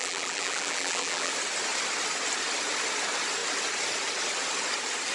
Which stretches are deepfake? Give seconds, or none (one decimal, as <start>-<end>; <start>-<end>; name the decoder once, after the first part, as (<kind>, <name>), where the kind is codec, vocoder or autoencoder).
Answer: 0.0-1.3 (vocoder, BigVGAN v2)